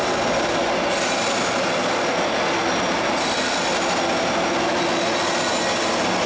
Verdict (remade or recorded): recorded